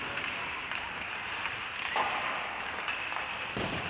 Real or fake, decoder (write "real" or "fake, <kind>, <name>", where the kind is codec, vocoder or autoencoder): real